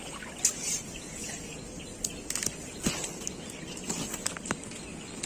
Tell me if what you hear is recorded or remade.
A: recorded